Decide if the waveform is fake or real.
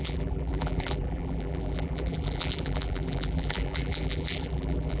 fake